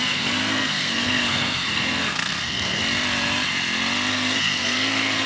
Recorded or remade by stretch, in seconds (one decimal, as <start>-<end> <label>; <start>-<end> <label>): 0.0-2.8 remade; 2.8-4.1 recorded; 4.1-5.3 remade